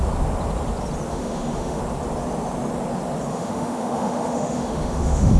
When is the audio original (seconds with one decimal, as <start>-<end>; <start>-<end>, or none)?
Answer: 0.0-1.1; 1.8-3.3